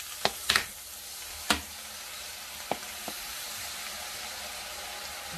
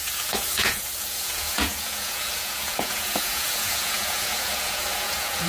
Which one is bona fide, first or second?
first